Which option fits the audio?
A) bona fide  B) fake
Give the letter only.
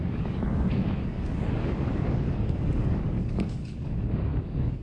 B